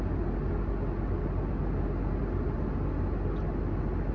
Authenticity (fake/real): real